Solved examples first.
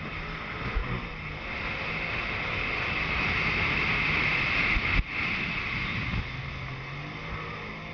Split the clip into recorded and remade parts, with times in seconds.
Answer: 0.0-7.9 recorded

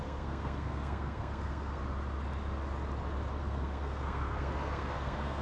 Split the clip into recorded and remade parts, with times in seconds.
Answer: 0.0-1.8 remade; 1.8-3.4 recorded; 3.4-5.4 remade

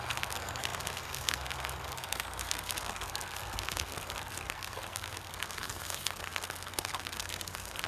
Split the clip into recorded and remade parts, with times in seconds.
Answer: 0.0-7.9 remade